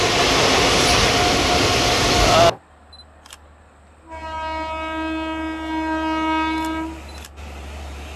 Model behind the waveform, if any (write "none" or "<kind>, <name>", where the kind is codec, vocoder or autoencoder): none